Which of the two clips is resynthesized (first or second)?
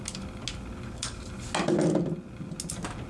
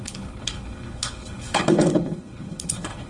second